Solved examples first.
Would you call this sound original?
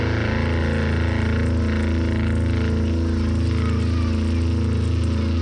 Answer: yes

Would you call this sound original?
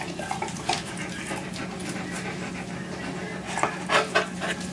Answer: yes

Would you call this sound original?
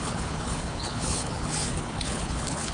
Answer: no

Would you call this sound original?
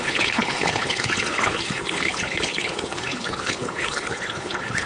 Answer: no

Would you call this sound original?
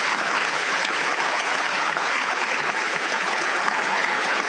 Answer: no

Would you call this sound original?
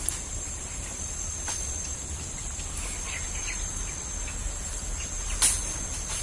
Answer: yes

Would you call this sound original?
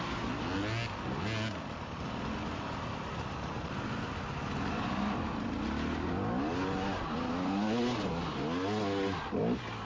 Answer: yes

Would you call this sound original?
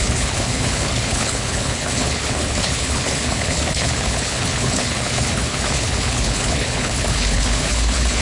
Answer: no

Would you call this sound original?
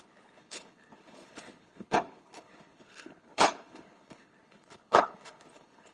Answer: no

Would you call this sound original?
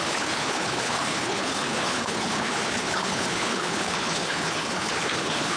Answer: no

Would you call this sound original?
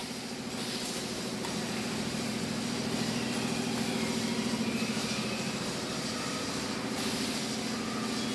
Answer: yes